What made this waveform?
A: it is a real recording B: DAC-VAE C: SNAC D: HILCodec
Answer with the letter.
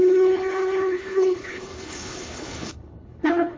D